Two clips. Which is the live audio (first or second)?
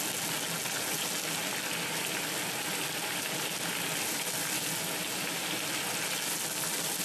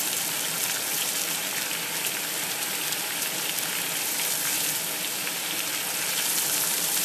first